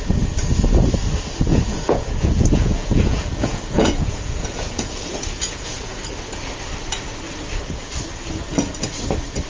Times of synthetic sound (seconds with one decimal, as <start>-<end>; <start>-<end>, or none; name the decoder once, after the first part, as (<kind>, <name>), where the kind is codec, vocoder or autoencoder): 1.5-6.0 (vocoder, Vocos)